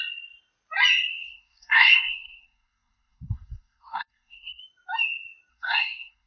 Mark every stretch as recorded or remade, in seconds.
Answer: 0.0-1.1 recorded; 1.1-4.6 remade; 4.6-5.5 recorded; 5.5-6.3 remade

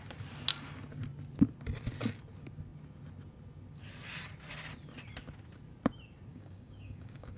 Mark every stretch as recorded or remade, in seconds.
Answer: 0.0-6.3 recorded; 6.3-7.4 remade